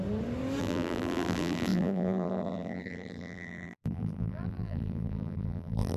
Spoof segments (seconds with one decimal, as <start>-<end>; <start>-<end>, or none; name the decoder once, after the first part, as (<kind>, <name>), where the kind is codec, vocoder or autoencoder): 0.6-6.0 (vocoder, BigVGAN v2)